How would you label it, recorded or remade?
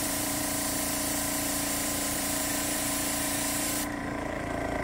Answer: remade